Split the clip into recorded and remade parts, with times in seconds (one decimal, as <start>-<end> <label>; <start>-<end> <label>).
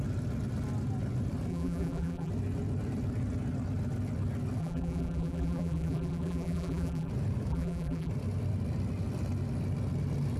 0.0-1.5 recorded; 1.5-2.3 remade; 2.3-4.6 recorded; 4.6-7.1 remade; 7.1-7.5 recorded; 7.5-8.1 remade; 8.1-10.4 recorded